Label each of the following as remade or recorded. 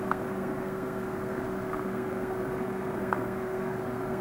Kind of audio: remade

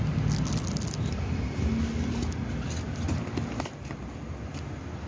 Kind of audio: recorded